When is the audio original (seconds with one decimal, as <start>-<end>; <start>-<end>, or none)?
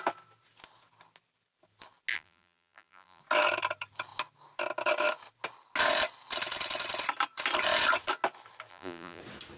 0.0-2.1; 3.2-8.7; 9.2-9.6